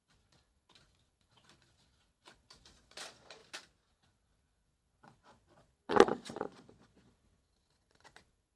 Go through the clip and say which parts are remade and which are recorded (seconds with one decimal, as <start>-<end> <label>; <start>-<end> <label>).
0.0-3.4 remade; 3.4-3.9 recorded; 3.9-8.6 remade